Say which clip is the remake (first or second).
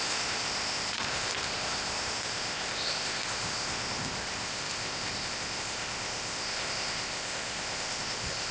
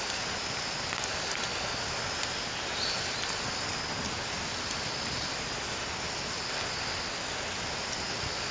first